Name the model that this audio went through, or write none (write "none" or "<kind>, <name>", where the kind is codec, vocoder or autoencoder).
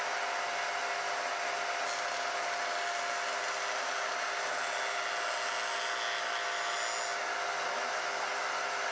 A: none